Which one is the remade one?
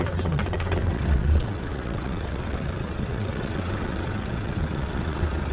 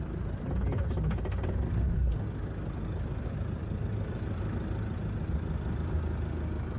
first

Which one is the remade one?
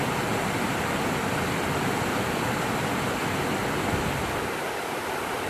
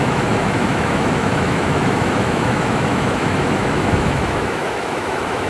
second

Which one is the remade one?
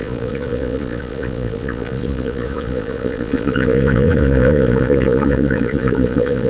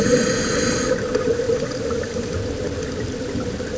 first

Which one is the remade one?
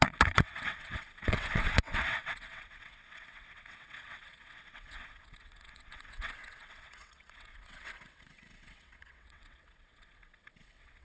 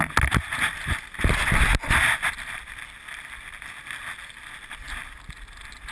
first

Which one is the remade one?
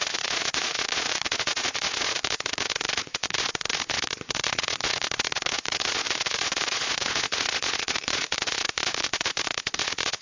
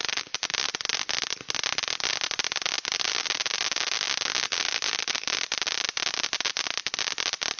first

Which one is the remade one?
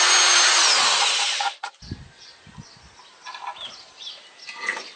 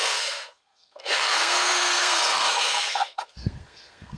second